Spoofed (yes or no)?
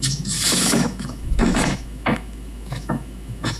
yes